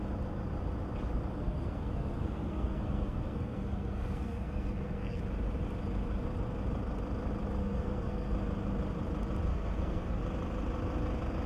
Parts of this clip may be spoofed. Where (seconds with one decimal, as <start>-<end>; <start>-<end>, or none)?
1.4-5.2; 7.6-8.3; 9.5-10.2